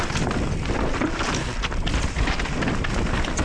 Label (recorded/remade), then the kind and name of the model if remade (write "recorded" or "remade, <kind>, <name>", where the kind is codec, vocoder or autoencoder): recorded